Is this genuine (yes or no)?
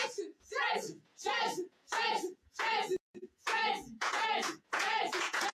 no